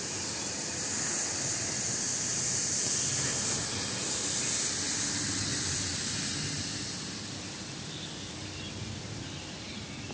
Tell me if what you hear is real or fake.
real